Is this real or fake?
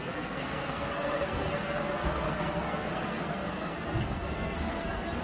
fake